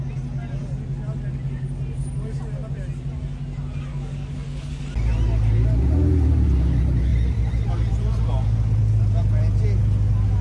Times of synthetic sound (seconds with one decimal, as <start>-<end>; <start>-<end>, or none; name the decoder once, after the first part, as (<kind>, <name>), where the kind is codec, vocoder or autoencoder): 3.9-4.8 (codec, DAC)

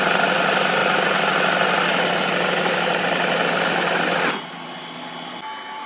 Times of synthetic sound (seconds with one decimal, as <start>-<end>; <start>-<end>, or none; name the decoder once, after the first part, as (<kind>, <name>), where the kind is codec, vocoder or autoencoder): none

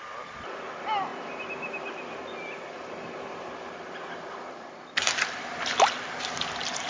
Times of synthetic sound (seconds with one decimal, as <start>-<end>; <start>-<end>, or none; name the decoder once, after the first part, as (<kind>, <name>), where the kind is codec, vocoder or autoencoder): none

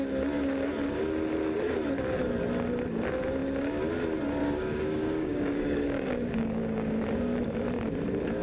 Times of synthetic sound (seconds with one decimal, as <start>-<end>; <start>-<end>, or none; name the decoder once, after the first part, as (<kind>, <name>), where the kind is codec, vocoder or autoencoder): 4.4-7.0 (codec, DAC)

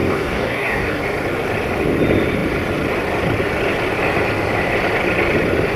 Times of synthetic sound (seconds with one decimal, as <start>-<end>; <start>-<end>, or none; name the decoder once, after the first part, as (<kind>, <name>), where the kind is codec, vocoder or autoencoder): 0.0-1.0 (codec, DAC)

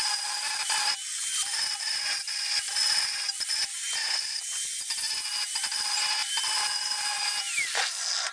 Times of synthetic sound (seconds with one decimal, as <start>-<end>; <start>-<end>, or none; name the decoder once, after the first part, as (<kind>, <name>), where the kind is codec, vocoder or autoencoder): none

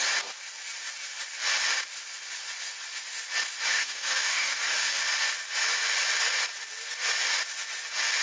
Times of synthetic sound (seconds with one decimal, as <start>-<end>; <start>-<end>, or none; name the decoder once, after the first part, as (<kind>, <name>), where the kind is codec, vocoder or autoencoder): 3.7-5.0 (codec, DAC)